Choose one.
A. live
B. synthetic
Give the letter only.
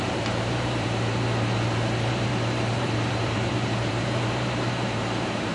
B